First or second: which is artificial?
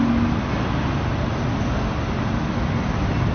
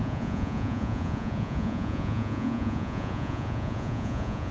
second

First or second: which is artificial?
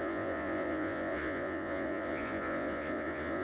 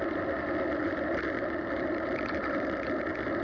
first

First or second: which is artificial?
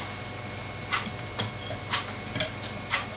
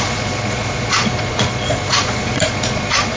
second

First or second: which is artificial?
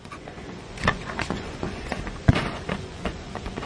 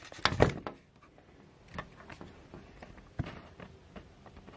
first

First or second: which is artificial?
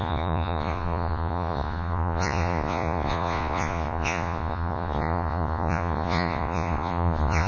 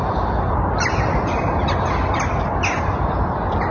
first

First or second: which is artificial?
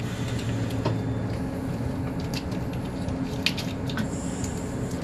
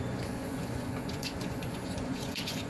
second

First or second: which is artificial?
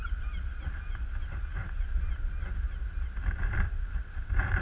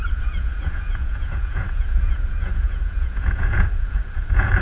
second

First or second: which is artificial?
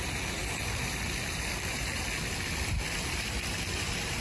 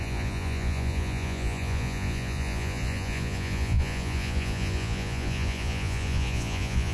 second